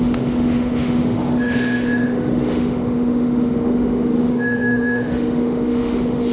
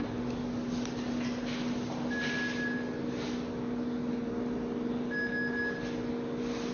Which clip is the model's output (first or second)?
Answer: first